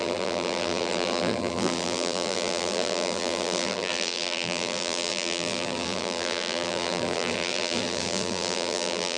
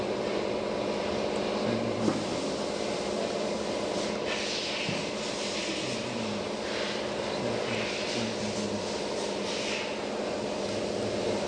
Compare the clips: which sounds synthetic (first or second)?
first